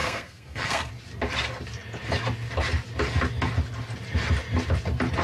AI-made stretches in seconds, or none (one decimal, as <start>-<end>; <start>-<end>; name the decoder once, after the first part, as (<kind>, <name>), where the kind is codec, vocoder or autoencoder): 0.0-0.9 (codec, SNAC)